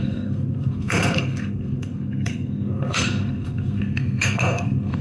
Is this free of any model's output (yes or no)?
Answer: no